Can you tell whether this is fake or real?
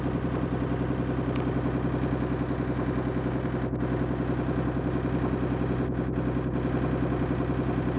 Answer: real